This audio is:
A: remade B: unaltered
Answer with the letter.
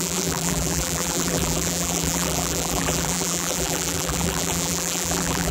A